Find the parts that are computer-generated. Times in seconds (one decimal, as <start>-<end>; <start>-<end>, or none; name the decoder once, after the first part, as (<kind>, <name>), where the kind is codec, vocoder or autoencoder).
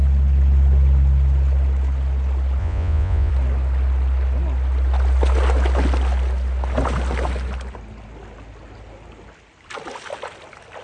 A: 2.6-3.3 (vocoder, Vocos)